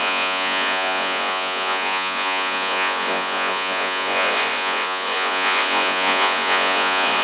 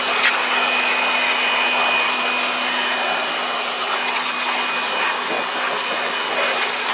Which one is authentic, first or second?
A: second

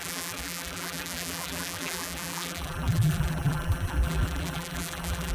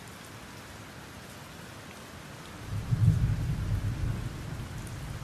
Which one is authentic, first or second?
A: second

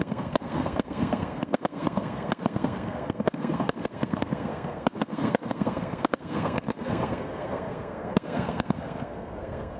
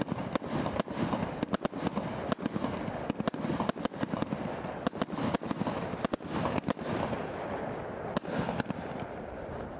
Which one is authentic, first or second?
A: second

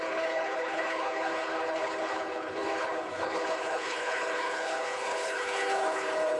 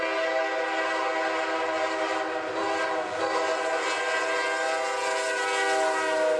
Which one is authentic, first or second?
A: second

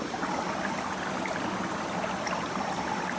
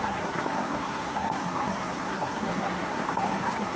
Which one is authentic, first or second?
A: first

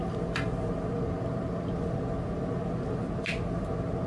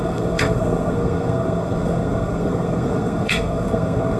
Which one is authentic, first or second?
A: first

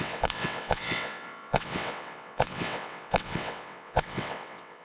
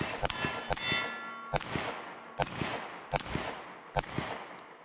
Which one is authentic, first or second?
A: second